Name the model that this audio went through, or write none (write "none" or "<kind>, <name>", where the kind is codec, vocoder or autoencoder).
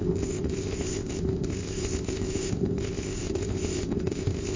codec, ZipCodec